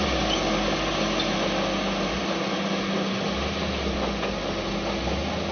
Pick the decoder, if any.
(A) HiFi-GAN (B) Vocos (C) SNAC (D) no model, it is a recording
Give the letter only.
D